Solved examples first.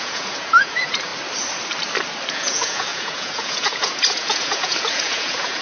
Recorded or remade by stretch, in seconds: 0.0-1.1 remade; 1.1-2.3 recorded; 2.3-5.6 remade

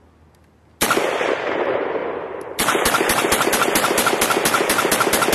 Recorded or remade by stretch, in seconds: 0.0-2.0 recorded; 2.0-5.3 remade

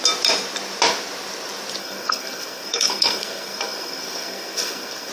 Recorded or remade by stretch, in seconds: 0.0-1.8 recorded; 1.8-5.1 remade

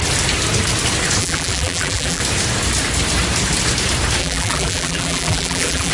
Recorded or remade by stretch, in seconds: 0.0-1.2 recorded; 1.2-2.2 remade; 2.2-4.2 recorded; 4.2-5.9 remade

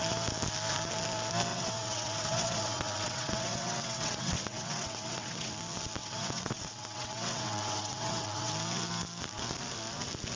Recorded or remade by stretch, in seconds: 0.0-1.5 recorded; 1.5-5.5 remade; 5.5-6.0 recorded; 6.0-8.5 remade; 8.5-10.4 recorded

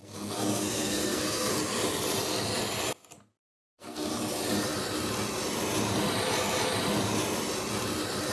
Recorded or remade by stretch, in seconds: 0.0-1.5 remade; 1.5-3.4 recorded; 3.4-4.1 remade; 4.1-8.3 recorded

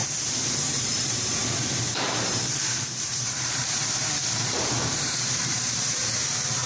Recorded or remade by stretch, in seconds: 0.0-6.7 remade